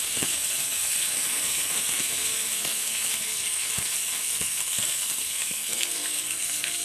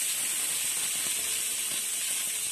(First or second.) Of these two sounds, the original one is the second